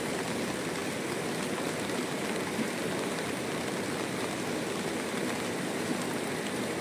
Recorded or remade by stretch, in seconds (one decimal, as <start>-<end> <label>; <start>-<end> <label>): 0.0-6.8 recorded